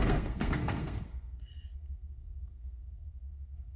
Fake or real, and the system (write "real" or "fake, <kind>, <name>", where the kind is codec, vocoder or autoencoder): fake, codec, SNAC